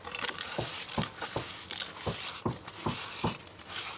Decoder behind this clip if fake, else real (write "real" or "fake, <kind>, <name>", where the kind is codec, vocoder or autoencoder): real